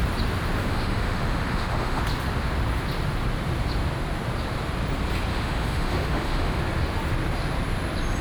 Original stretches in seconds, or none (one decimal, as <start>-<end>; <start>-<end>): 0.0-0.6; 2.0-5.3; 6.6-8.2